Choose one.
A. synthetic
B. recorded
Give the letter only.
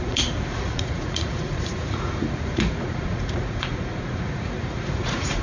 A